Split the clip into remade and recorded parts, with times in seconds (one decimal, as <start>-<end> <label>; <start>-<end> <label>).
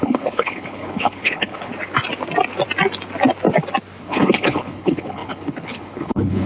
0.0-1.7 remade; 1.7-4.0 recorded; 4.0-6.5 remade